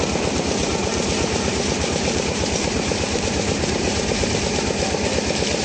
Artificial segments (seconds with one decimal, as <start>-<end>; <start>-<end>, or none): 0.9-4.3